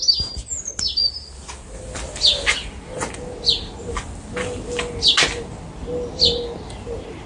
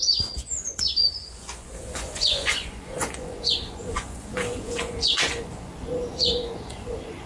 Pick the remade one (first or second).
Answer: second